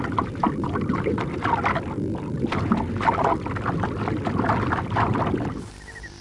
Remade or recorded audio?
recorded